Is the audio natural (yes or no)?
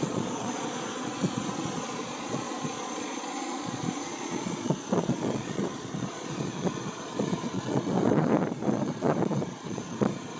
no